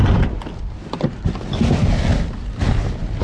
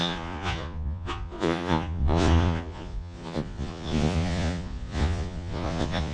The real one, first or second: first